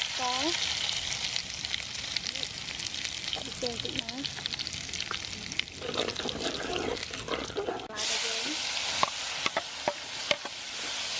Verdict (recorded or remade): recorded